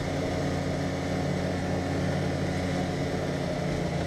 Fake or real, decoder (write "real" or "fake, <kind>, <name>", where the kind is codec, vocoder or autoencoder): real